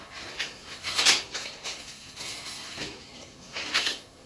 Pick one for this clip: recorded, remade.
remade